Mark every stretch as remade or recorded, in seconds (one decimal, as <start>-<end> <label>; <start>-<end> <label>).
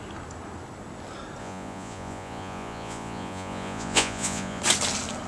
0.0-1.4 recorded; 1.4-4.6 remade; 4.6-5.3 recorded